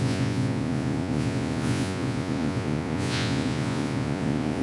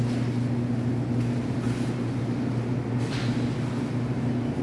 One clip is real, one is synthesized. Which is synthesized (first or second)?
first